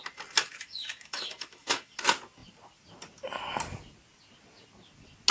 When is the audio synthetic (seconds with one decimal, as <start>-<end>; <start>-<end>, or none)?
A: 0.4-1.9